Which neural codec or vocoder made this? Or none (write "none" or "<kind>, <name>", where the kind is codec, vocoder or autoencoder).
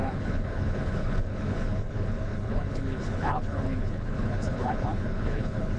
codec, HILCodec